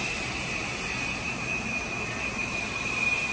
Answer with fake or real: fake